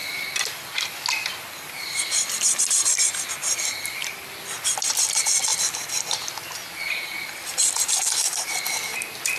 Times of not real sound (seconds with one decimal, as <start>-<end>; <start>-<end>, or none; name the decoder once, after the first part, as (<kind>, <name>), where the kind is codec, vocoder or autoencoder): none